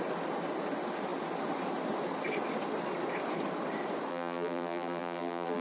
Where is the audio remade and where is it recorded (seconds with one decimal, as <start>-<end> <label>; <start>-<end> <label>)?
0.0-4.1 recorded; 4.1-5.6 remade